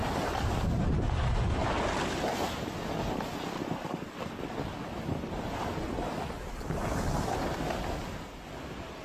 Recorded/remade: recorded